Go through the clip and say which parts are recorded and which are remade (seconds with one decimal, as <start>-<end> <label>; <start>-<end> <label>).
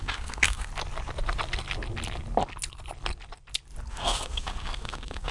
0.0-0.7 remade; 0.7-3.9 recorded; 3.9-5.3 remade